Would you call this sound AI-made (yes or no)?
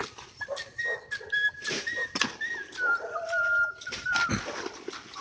no